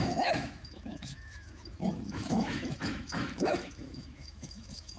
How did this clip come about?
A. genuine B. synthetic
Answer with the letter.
B